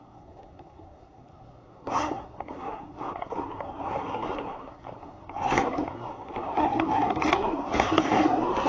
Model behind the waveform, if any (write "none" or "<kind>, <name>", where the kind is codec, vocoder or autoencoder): codec, SNAC